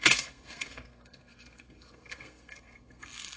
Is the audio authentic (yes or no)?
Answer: no